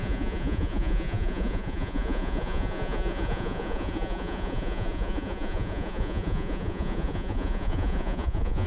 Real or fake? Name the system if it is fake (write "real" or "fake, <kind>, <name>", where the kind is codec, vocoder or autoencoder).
fake, vocoder, Vocos